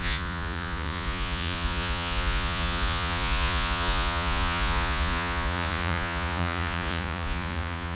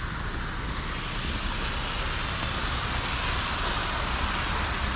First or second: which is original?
second